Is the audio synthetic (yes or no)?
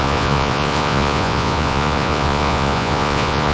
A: yes